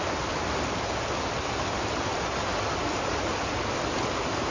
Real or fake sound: real